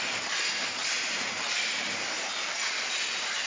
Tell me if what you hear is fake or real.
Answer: fake